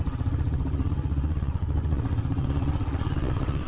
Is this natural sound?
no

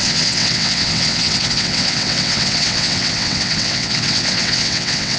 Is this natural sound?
no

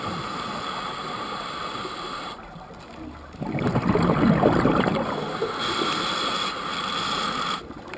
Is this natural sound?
yes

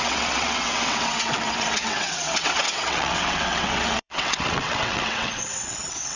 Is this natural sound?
no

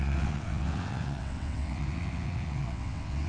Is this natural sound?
no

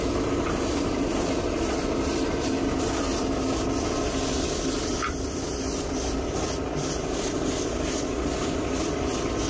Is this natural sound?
yes